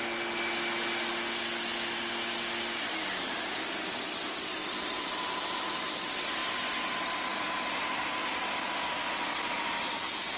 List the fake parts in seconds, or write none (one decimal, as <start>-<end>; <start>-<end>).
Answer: none